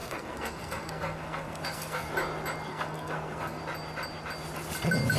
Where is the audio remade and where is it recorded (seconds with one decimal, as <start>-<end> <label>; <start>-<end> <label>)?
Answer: 0.0-2.1 remade; 2.1-2.7 recorded; 2.7-3.6 remade; 3.6-5.2 recorded